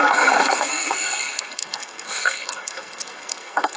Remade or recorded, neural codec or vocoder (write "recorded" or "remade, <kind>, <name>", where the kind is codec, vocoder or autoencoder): remade, codec, SNAC